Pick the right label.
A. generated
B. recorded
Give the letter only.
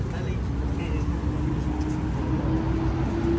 B